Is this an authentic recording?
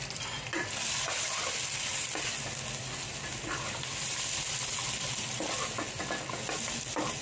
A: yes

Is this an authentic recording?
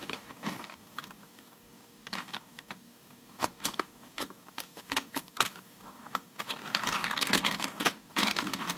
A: no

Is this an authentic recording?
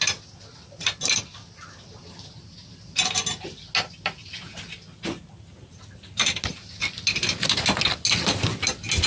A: yes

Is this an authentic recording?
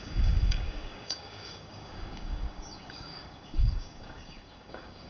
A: no